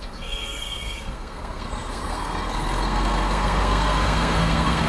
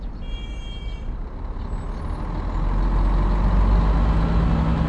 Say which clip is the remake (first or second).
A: first